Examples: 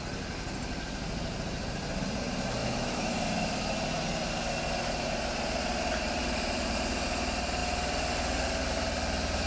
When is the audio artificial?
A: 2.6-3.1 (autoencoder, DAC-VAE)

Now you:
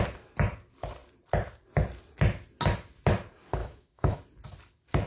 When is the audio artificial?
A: 3.6-4.2 (autoencoder, DAC-VAE)